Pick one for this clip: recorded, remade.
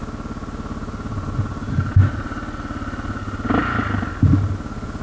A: recorded